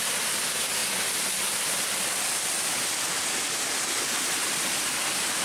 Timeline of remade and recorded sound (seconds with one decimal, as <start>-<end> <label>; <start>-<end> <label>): 0.0-5.4 recorded